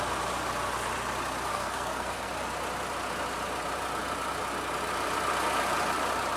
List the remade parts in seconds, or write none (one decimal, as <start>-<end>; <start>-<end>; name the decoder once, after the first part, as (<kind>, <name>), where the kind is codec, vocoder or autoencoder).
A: 1.5-2.3 (codec, SNAC)